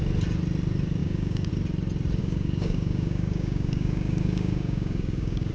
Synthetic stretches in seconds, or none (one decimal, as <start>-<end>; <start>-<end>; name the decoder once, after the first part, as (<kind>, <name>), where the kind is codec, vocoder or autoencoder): 1.0-1.5 (codec, DAC); 2.2-5.5